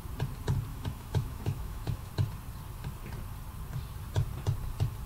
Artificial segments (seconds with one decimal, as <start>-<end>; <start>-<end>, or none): 0.7-2.1